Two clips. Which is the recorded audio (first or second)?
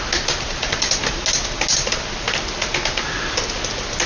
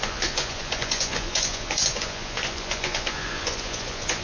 first